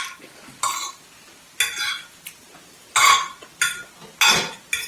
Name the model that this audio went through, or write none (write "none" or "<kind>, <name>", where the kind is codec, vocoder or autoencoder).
none